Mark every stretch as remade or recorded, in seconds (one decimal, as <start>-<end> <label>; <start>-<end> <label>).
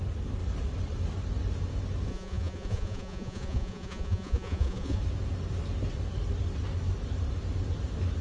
0.0-2.1 recorded; 2.1-5.0 remade; 5.0-8.2 recorded